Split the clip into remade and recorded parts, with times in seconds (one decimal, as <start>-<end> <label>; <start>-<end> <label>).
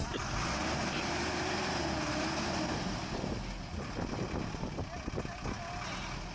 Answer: 0.0-0.6 recorded; 0.6-3.3 remade; 3.3-6.3 recorded